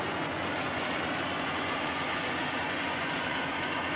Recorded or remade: remade